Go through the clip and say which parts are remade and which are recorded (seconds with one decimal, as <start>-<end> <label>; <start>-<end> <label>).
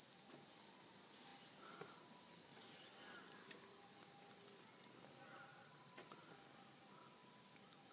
0.0-2.5 recorded; 2.5-3.0 remade; 3.0-5.5 recorded; 5.5-6.3 remade; 6.3-7.9 recorded